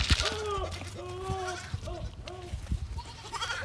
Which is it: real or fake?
real